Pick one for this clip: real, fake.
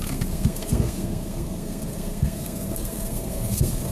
fake